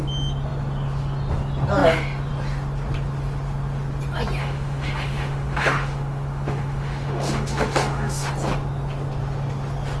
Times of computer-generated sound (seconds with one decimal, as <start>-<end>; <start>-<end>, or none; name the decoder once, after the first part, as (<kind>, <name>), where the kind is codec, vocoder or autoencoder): 4.4-8.3 (autoencoder, DAC-VAE)